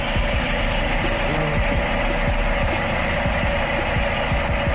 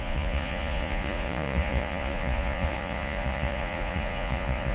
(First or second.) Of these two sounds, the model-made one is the second